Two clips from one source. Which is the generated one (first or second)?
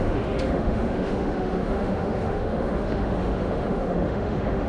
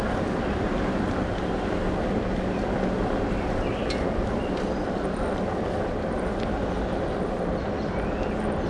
first